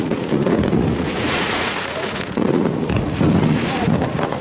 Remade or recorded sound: remade